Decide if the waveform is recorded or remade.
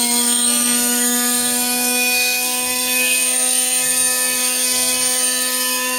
remade